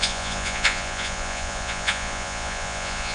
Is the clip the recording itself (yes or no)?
no